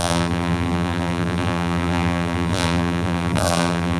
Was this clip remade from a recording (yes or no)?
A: yes